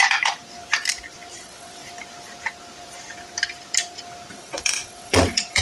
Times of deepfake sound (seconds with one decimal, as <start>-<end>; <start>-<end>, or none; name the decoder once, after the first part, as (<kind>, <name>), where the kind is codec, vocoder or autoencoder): 1.3-1.8 (vocoder, WaveNeXt); 4.3-5.6